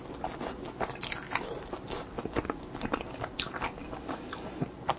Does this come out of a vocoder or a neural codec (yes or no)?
no